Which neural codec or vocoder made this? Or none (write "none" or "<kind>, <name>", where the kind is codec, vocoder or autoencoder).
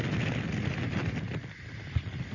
none